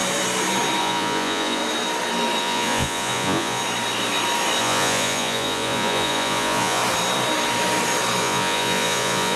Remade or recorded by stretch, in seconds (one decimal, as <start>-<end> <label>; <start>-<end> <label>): 0.0-0.8 recorded; 0.8-1.6 remade; 1.6-2.4 recorded; 2.4-3.6 remade; 3.6-4.6 recorded; 4.6-6.8 remade; 6.8-8.2 recorded; 8.2-9.4 remade